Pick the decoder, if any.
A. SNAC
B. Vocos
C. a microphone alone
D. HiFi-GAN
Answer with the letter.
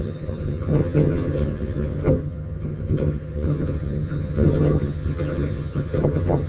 D